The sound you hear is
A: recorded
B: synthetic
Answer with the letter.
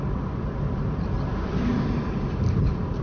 A